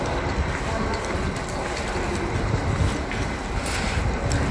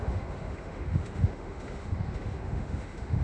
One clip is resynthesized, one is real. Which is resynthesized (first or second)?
second